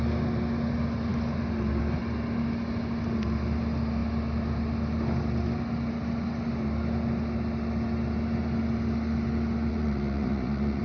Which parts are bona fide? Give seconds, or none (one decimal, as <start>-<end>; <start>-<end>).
0.0-9.7